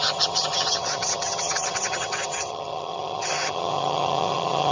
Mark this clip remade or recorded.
remade